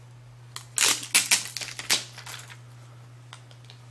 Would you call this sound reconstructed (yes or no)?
no